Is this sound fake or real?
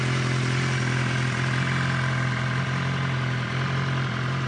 real